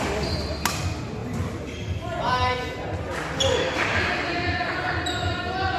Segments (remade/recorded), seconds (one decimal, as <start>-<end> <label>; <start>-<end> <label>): 0.0-5.8 recorded